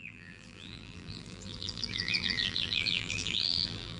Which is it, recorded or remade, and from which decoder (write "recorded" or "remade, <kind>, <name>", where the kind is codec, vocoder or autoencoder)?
remade, vocoder, BigVGAN v2